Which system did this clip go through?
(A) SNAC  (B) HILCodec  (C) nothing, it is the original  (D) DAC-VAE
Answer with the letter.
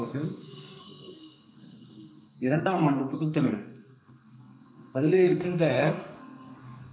A